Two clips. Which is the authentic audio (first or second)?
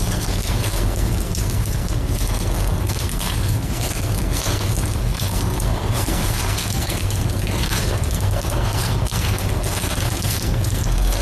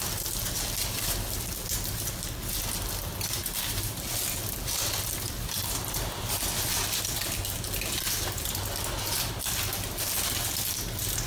second